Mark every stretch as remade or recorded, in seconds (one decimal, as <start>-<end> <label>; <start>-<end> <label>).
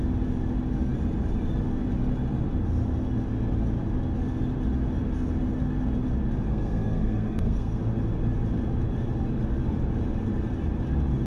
0.0-6.5 recorded; 6.5-7.8 remade; 7.8-11.3 recorded